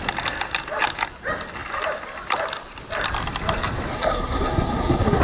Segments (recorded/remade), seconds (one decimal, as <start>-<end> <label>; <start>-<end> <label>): 0.0-3.9 recorded; 3.9-5.2 remade